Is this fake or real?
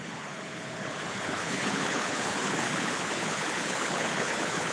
fake